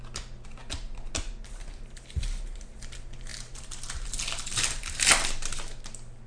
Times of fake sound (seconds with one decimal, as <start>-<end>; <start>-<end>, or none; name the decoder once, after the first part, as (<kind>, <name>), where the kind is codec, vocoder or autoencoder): none